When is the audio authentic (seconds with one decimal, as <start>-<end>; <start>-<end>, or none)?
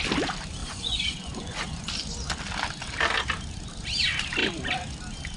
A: 0.0-0.6; 1.9-5.4